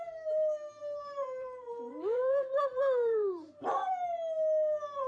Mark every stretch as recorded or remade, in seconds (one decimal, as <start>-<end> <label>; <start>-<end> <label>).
0.0-0.8 recorded; 0.8-3.9 remade; 3.9-5.1 recorded